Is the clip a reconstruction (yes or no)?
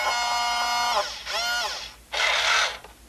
no